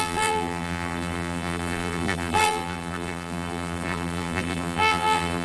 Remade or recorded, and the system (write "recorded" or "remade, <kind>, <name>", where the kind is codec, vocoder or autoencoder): remade, vocoder, BigVGAN v2